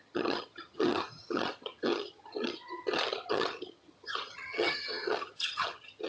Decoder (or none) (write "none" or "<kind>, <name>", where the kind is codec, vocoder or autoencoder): vocoder, HiFi-GAN